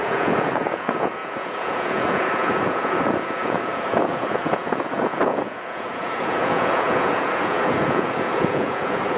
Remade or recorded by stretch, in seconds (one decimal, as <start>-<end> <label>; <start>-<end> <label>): 0.0-9.2 remade